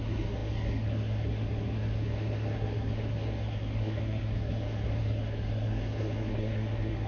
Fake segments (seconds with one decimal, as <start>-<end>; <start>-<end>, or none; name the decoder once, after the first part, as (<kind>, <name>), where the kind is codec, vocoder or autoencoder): 0.0-7.1 (codec, SNAC)